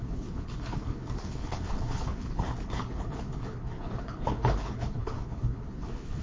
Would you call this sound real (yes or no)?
no